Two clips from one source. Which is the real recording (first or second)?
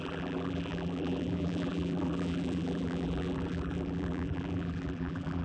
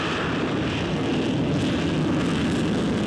second